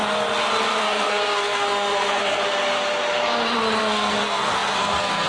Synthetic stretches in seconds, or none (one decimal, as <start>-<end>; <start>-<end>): 0.8-2.4; 3.8-5.3